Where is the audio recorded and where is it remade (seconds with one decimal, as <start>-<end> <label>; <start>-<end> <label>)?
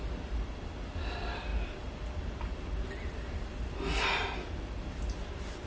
0.0-5.7 recorded